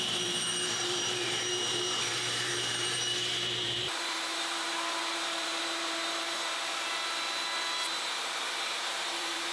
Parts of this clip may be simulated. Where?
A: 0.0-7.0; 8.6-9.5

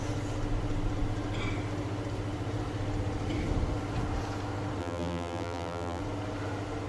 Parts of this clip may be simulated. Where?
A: 4.8-6.0

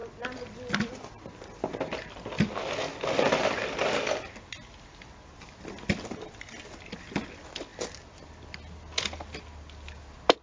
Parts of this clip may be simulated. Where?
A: none

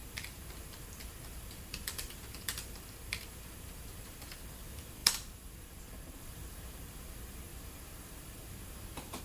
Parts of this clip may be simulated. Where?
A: 0.0-9.2

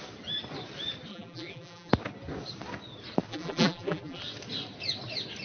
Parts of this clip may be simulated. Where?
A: 1.1-1.9; 3.3-4.2

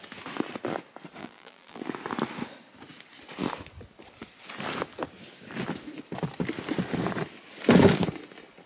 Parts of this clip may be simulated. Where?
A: 1.2-1.8

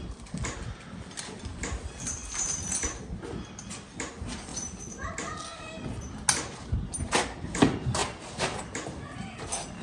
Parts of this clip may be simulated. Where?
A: 4.5-5.1